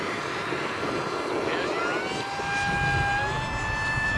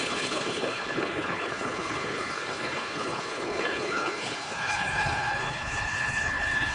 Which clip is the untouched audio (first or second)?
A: first